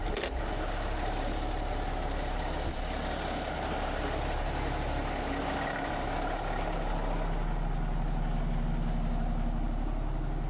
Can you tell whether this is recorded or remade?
recorded